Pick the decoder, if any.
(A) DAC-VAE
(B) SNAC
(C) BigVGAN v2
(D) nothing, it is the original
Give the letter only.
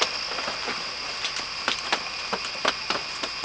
D